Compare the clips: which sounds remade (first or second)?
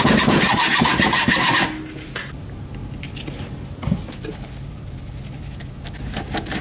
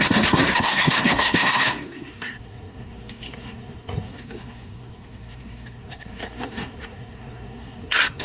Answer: second